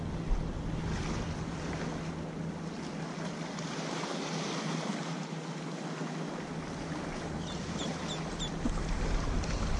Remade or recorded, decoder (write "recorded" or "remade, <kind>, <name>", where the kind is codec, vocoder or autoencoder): recorded